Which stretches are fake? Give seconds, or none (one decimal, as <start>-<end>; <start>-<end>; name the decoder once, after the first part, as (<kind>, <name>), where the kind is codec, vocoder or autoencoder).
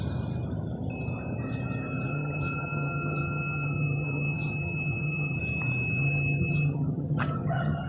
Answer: 2.1-5.4 (vocoder, HiFi-GAN); 6.0-7.9